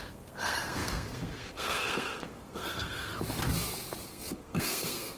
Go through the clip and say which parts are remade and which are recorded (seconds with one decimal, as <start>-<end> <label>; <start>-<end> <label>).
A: 0.0-3.1 remade; 3.1-4.1 recorded; 4.1-5.2 remade